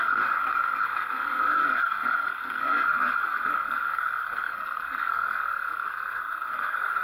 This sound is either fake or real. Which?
fake